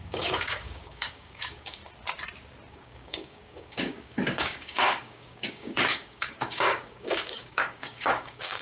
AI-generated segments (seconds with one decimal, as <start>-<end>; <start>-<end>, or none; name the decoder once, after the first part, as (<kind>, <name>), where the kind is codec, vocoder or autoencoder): 0.0-1.8 (codec, DAC); 2.7-8.6